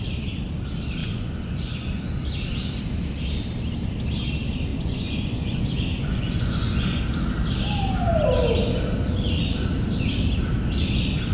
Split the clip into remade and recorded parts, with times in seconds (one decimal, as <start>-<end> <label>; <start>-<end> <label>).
0.0-1.0 recorded; 1.0-2.0 remade; 2.0-4.7 recorded; 4.7-7.0 remade; 7.0-11.3 recorded